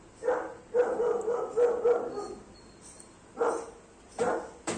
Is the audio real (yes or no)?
yes